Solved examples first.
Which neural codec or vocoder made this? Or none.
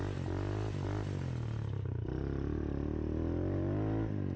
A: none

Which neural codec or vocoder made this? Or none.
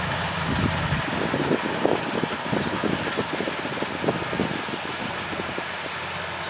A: none